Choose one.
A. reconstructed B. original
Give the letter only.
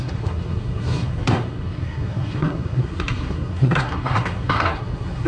A